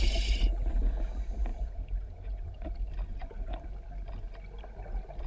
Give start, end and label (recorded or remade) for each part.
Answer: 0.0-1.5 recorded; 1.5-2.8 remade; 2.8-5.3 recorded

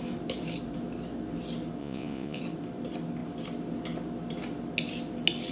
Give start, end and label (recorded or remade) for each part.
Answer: 0.0-1.8 recorded; 1.8-2.4 remade; 2.4-5.5 recorded

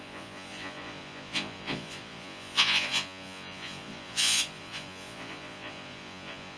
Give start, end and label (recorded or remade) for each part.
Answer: 0.0-6.6 remade